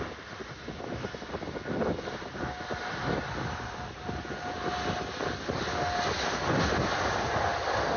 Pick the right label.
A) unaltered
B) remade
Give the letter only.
A